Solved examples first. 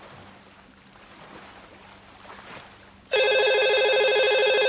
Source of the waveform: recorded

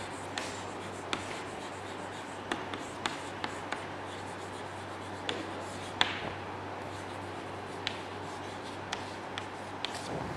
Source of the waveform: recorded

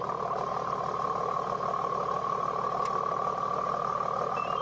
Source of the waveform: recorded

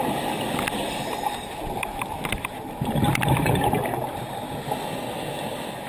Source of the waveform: recorded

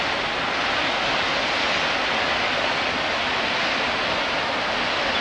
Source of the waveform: recorded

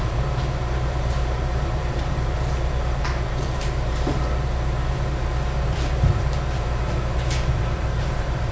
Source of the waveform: remade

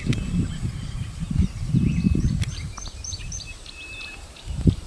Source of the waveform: remade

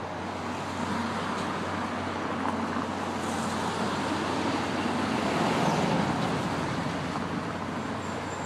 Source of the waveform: recorded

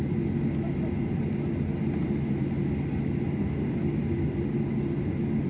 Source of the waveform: recorded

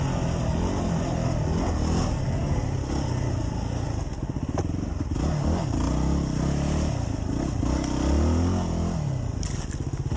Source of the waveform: recorded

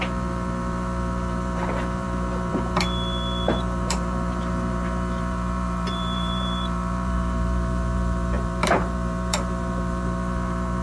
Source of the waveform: remade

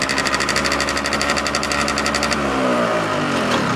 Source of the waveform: remade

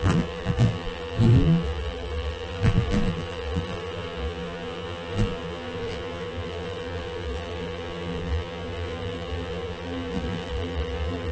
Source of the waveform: remade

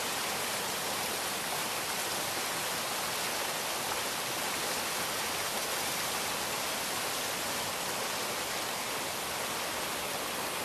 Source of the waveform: recorded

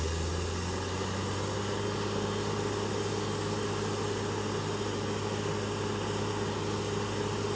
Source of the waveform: recorded